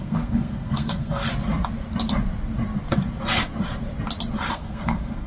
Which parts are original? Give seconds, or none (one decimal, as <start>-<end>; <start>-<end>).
1.3-4.5

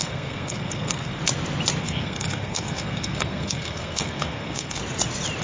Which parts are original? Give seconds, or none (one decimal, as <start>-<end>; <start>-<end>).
1.2-1.8; 4.8-5.4

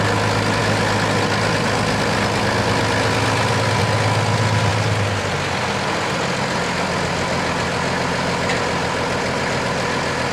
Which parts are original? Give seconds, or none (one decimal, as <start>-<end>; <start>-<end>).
0.0-10.3

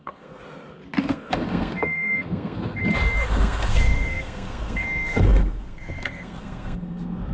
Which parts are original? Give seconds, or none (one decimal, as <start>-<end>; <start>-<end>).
0.4-1.0; 2.8-3.3

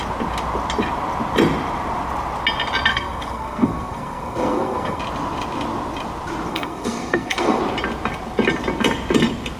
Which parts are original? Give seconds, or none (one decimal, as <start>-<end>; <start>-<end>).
0.0-2.9; 5.0-6.5; 7.6-9.6

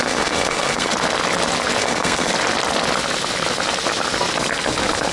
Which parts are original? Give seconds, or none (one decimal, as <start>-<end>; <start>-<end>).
0.9-1.8; 2.3-5.1

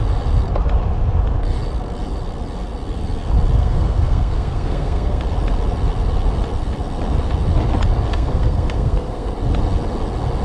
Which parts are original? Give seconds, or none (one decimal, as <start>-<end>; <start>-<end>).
0.0-3.6; 5.2-8.1; 9.3-10.4

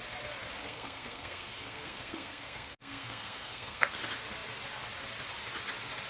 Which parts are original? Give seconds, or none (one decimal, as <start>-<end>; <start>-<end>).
0.0-0.6; 4.0-6.1